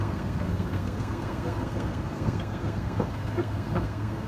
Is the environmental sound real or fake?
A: fake